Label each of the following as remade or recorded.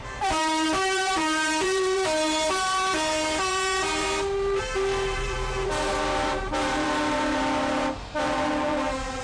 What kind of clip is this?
remade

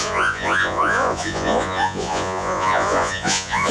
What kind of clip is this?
remade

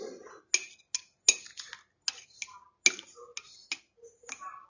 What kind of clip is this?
recorded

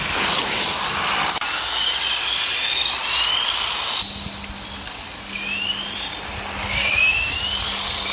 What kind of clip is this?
recorded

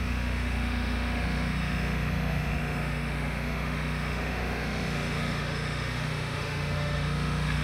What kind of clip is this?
remade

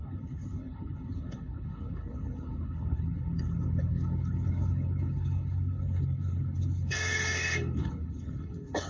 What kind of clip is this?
remade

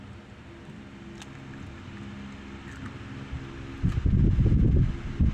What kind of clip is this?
recorded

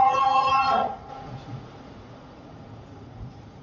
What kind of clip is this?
remade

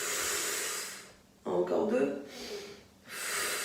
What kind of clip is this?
recorded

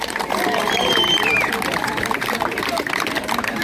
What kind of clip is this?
remade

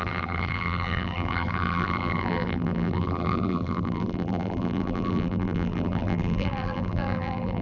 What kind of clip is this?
remade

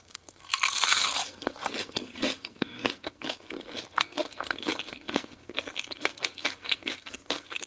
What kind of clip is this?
remade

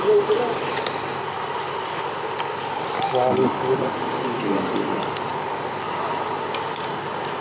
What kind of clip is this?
recorded